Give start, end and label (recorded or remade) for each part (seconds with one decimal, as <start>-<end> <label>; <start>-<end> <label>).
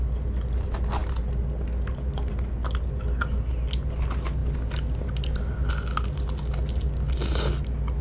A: 0.0-8.0 recorded